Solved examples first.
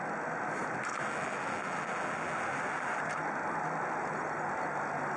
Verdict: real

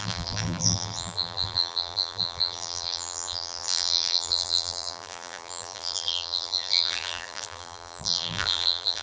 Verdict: fake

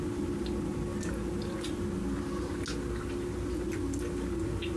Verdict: real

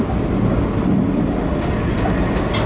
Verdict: real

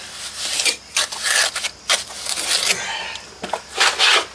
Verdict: real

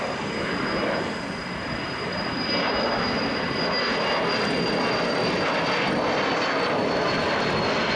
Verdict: real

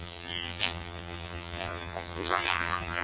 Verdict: fake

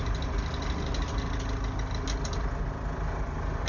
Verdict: real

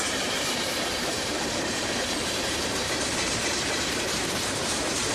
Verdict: fake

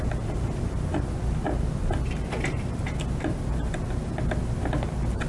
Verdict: real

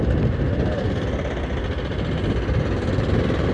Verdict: real